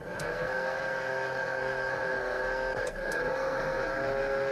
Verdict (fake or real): fake